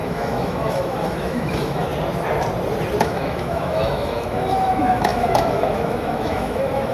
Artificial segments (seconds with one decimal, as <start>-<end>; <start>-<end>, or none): 0.0-1.9; 3.0-6.9